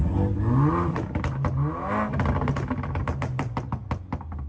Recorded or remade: recorded